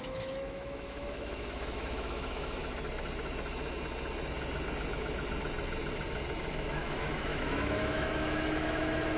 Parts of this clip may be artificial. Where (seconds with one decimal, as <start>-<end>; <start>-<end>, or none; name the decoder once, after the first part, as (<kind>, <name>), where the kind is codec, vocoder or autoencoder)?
0.0-2.6 (autoencoder, DAC-VAE); 6.5-9.2